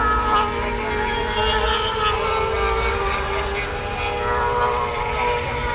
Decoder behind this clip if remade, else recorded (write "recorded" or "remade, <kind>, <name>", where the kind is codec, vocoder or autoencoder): recorded